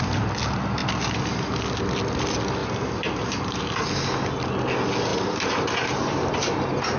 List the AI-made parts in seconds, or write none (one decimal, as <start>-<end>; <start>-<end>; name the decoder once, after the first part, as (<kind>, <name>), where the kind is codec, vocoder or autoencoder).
2.6-3.9 (vocoder, BigVGAN v2); 5.1-6.3